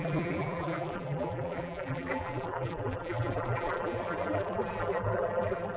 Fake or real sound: fake